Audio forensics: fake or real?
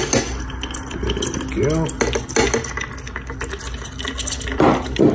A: real